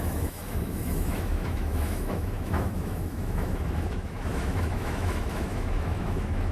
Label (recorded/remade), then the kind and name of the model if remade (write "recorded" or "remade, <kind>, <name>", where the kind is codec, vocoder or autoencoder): remade, autoencoder, DAC-VAE